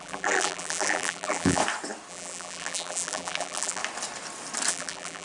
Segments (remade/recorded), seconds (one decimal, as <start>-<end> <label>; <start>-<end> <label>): 0.0-1.6 remade; 1.6-2.1 recorded; 2.1-3.8 remade; 3.8-4.7 recorded; 4.7-5.2 remade